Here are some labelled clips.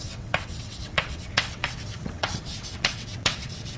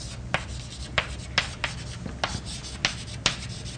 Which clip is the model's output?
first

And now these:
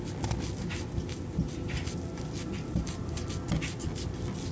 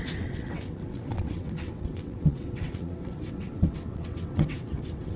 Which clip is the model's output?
second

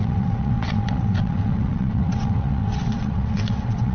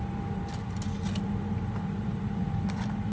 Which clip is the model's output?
first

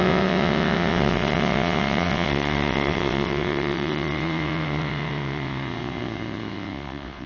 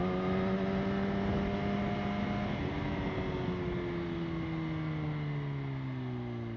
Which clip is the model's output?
first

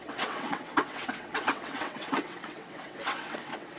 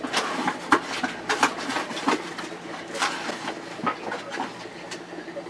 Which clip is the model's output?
first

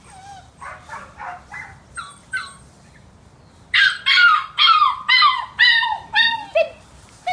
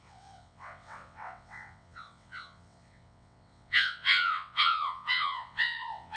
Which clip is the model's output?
second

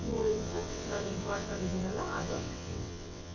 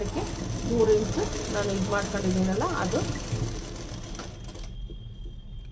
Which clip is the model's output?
first